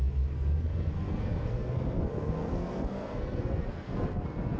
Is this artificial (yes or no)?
yes